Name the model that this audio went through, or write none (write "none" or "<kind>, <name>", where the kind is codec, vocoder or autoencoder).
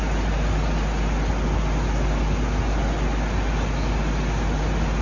none